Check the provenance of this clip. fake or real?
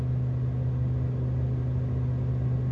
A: real